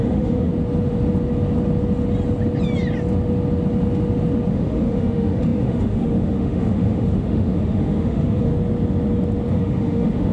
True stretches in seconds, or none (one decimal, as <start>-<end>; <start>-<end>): 0.5-4.5; 8.5-9.5